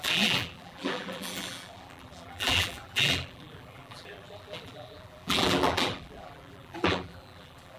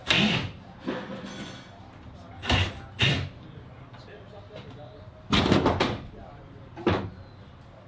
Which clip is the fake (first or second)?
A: first